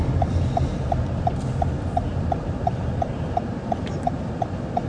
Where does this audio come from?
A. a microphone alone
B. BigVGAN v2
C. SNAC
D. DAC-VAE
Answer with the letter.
B